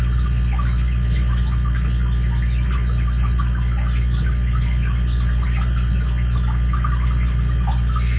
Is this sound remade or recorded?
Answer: recorded